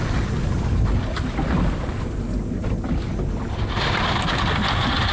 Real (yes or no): yes